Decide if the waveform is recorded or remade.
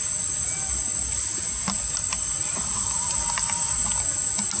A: recorded